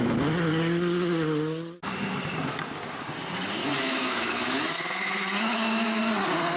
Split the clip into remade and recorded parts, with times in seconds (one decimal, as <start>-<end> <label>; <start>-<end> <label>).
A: 0.0-3.6 recorded; 3.6-6.0 remade; 6.0-6.6 recorded